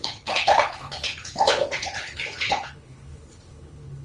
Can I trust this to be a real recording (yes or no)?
no